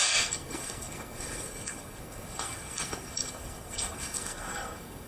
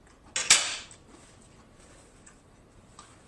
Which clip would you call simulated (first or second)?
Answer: first